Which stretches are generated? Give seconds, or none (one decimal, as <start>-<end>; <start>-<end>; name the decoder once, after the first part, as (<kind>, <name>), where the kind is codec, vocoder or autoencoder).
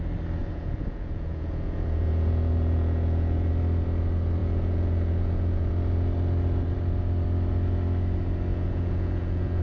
0.4-3.5 (vocoder, Vocos); 4.4-5.7; 8.5-9.6